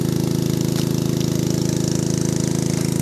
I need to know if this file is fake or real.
real